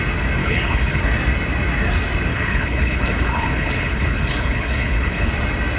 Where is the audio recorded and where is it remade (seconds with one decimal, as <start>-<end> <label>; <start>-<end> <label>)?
0.0-0.4 recorded; 0.4-1.0 remade; 1.0-2.3 recorded; 2.3-5.3 remade; 5.3-5.8 recorded